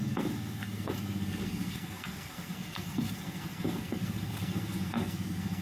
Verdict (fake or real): fake